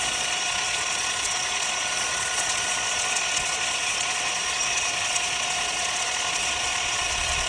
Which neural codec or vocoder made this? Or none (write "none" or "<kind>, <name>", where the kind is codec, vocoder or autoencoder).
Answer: vocoder, Vocos